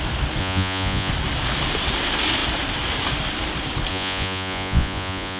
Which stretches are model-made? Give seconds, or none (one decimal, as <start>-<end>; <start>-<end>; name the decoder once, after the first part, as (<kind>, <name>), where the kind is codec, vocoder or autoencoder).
0.4-1.1 (vocoder, Vocos); 3.9-5.4